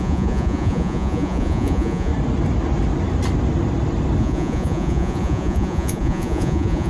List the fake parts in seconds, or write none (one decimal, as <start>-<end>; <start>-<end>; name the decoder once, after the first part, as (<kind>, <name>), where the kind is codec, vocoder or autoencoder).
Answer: 0.0-2.1 (vocoder, Vocos); 4.2-6.9